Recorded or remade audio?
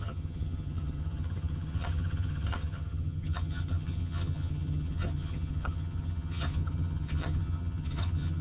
remade